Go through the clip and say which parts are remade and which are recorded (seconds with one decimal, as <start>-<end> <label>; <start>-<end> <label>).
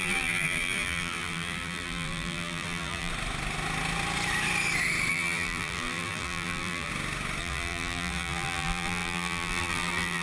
0.0-3.1 remade; 3.1-5.1 recorded; 5.1-6.9 remade; 6.9-7.4 recorded; 7.4-10.2 remade